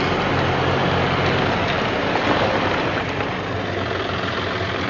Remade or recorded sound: recorded